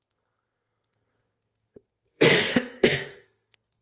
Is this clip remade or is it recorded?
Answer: remade